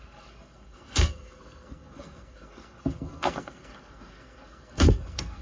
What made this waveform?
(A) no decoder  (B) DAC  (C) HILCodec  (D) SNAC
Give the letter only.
D